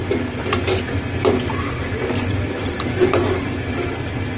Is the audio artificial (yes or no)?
no